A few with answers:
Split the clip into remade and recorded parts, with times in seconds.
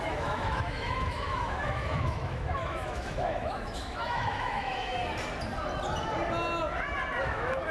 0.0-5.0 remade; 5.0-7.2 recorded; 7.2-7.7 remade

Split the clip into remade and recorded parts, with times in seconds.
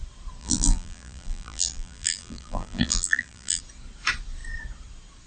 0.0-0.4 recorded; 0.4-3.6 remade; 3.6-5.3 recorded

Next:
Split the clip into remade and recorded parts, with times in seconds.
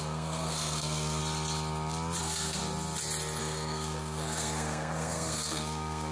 0.0-1.2 remade; 1.2-2.2 recorded; 2.2-2.6 remade; 2.6-3.4 recorded; 3.4-6.1 remade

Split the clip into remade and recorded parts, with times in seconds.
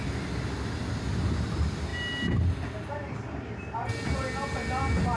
0.0-1.9 remade; 1.9-5.2 recorded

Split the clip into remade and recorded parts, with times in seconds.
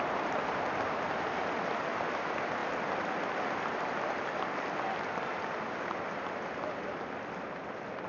0.0-8.1 recorded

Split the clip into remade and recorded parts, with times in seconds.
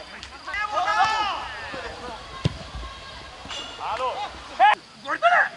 0.0-5.6 recorded